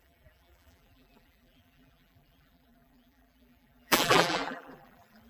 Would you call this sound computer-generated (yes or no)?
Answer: yes